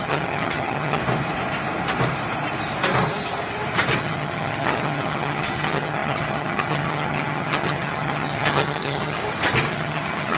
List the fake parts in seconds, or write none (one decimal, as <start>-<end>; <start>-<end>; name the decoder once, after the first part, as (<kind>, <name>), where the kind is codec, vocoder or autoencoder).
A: 0.0-1.0 (vocoder, HiFi-GAN); 4.0-9.2; 9.7-10.4